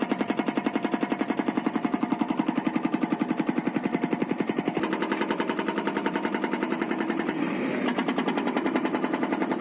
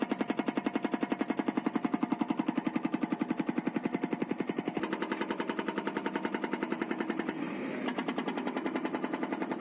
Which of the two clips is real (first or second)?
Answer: second